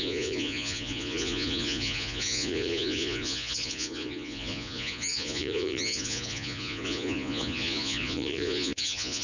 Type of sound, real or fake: fake